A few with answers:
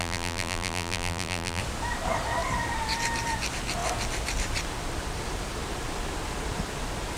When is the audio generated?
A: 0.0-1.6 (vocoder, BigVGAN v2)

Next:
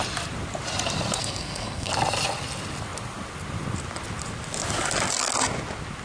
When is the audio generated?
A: 1.2-1.9 (codec, SNAC)